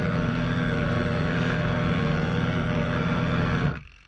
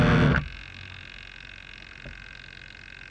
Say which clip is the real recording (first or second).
second